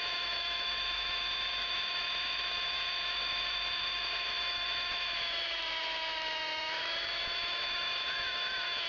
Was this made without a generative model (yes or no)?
no